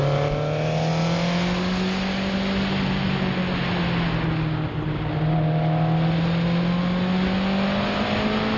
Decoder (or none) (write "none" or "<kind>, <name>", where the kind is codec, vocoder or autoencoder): none